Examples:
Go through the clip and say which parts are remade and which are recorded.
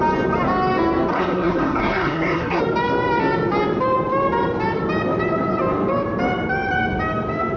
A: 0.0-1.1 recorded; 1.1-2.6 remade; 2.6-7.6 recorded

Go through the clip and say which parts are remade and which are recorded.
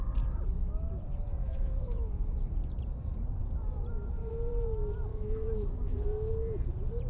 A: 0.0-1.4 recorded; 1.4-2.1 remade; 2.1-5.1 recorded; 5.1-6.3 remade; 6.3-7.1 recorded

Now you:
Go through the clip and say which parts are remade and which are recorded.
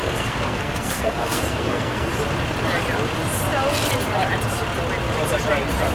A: 0.0-2.1 remade; 2.1-5.9 recorded